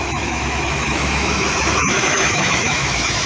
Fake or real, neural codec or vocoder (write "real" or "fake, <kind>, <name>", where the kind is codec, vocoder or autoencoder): fake, autoencoder, DAC-VAE